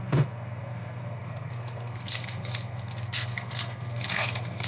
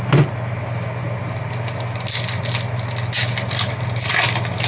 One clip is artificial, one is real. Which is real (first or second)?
second